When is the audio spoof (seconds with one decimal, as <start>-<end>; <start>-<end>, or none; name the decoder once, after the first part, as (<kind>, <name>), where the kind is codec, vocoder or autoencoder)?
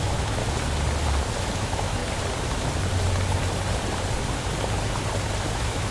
0.0-0.4 (autoencoder, DAC-VAE); 1.4-2.0; 5.5-5.9